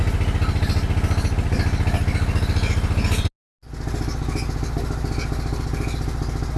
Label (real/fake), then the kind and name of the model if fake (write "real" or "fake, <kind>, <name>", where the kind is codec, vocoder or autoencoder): real